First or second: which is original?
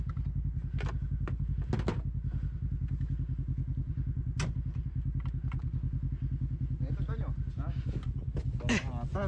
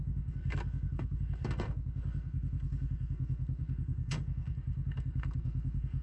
first